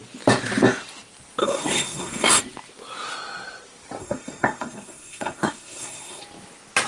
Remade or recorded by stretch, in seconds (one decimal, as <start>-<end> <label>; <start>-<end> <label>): 0.0-1.4 recorded; 1.4-2.4 remade; 2.4-4.0 recorded; 4.0-6.2 remade; 6.2-6.9 recorded